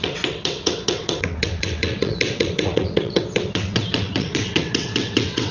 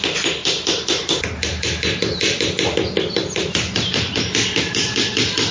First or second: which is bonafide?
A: second